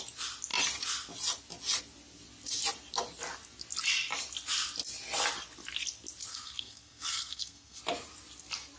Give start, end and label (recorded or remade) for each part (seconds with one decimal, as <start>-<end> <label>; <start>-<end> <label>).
0.0-6.3 recorded; 6.3-7.8 remade; 7.8-8.8 recorded